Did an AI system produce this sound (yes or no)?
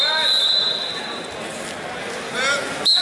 no